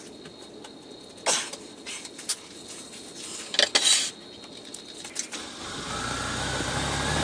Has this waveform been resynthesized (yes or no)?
no